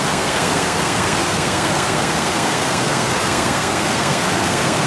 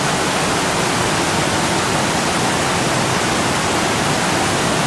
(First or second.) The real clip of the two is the second